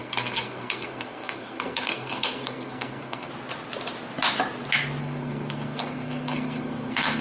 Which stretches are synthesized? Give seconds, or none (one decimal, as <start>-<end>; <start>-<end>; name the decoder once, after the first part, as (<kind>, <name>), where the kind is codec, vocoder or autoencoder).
0.0-3.3 (codec, SNAC); 5.0-7.2